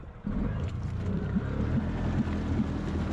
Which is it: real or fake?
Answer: real